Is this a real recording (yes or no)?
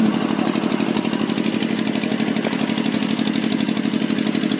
yes